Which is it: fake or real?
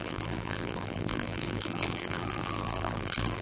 fake